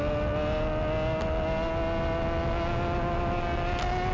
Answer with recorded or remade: recorded